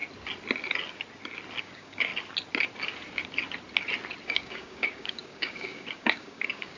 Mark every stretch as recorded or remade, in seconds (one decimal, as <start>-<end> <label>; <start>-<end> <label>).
0.0-1.6 recorded; 1.6-2.1 remade; 2.1-4.2 recorded; 4.2-6.8 remade